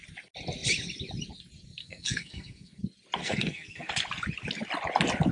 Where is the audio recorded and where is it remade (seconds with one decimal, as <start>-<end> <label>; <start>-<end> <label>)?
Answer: 0.0-1.8 recorded; 1.8-2.8 remade; 2.8-3.2 recorded; 3.2-3.9 remade; 3.9-5.3 recorded